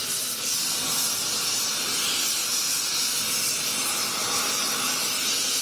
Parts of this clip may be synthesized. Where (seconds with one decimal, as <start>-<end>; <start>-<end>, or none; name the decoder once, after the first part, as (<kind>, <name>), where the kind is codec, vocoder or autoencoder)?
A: none